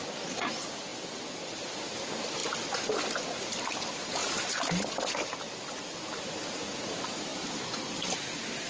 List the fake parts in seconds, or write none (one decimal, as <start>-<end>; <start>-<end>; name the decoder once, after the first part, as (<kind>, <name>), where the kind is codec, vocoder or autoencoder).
none